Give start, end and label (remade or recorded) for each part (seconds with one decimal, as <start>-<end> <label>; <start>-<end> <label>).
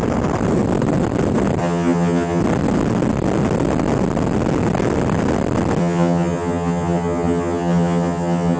0.0-1.6 recorded; 1.6-2.4 remade; 2.4-5.8 recorded; 5.8-8.6 remade